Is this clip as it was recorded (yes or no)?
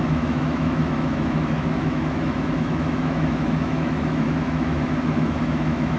no